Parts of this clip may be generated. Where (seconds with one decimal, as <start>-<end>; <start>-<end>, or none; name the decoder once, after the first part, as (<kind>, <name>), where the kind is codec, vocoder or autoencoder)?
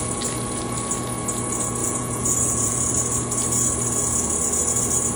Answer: 1.8-2.9 (vocoder, Vocos)